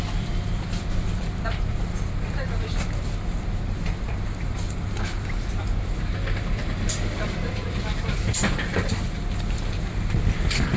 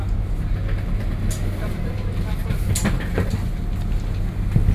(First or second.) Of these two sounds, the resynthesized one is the first